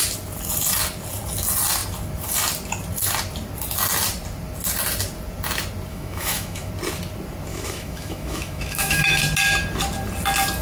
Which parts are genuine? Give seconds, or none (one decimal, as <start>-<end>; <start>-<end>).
0.0-5.9; 6.7-7.5; 9.2-10.6